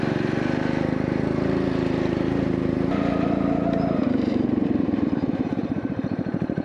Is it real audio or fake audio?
fake